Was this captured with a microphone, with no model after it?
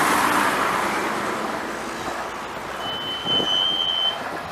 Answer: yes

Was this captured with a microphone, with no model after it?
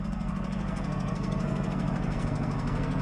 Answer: no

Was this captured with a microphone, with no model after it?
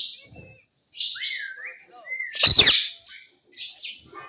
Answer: yes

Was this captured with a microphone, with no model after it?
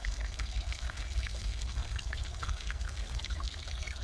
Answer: no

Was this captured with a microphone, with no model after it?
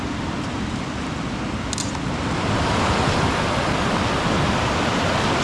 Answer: yes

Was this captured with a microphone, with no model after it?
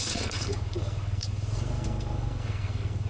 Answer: no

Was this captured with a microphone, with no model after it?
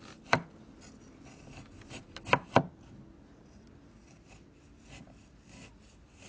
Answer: yes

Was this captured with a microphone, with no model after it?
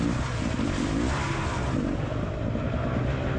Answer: yes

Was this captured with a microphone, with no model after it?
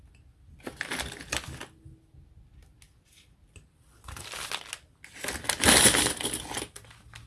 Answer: yes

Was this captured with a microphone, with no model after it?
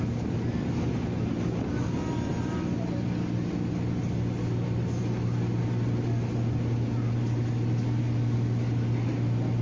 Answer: yes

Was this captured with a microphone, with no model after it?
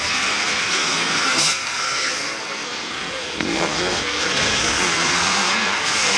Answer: no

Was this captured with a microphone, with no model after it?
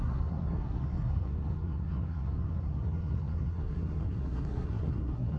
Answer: no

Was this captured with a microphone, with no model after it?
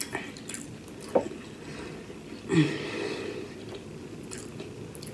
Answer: yes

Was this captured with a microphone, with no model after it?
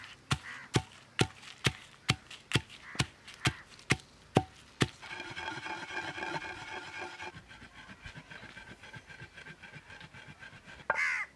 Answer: yes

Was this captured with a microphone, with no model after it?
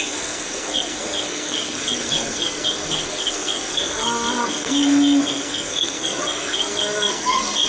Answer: no